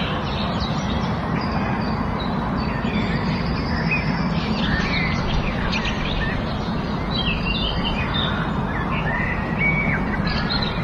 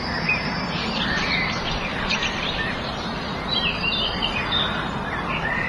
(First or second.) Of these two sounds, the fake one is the second